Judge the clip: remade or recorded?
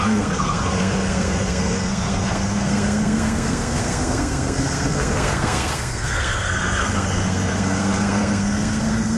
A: remade